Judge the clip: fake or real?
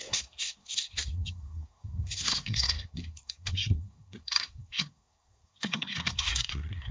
fake